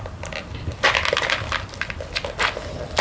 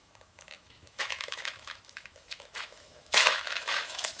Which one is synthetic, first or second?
second